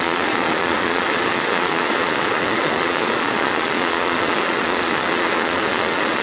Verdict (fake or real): fake